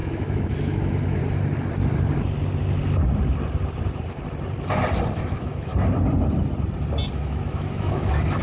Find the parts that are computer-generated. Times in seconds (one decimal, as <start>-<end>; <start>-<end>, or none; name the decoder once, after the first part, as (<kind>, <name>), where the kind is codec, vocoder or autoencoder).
0.0-1.2 (autoencoder, DAC-VAE); 5.2-5.7; 7.1-8.4